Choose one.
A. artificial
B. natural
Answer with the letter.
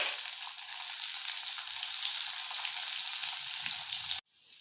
B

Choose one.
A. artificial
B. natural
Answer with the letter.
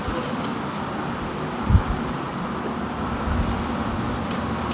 B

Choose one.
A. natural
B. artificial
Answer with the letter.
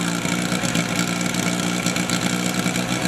A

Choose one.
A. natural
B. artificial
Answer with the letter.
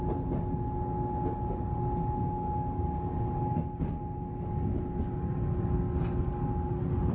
A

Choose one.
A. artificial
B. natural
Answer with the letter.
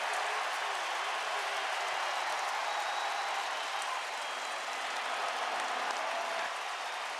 B